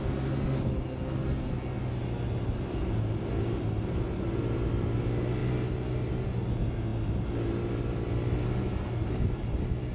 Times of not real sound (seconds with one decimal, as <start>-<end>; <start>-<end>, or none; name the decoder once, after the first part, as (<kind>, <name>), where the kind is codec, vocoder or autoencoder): none